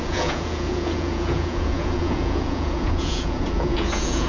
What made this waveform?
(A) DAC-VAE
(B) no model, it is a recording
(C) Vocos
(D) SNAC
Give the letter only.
C